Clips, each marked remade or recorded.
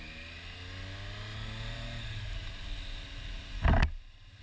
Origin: recorded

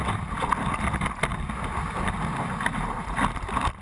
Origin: recorded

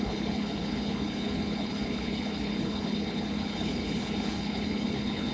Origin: remade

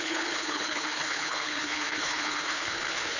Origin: remade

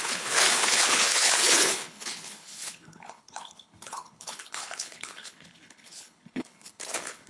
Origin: remade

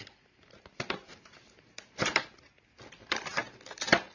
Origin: recorded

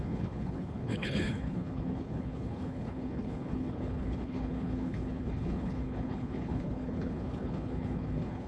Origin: remade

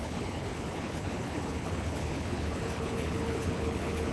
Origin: remade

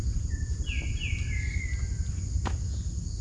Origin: recorded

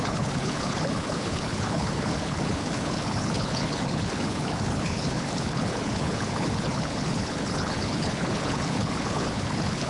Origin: remade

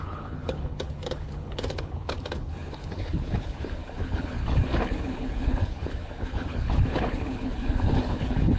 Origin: remade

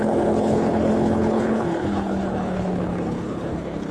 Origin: remade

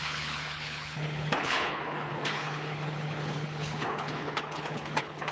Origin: remade